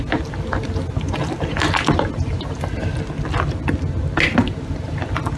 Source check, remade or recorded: recorded